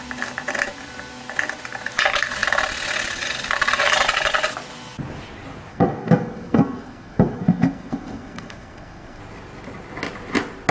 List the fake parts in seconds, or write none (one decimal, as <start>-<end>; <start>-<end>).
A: 5.7-9.2